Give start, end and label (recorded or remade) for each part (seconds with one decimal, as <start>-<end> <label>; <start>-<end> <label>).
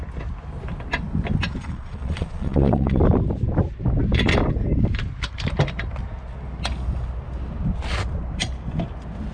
0.0-1.6 recorded; 1.6-3.0 remade; 3.0-9.3 recorded